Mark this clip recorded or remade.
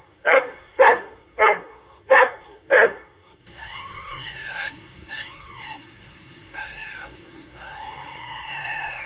remade